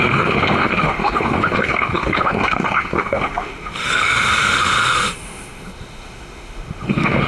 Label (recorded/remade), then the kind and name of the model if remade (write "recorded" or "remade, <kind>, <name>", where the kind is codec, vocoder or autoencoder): remade, autoencoder, DAC-VAE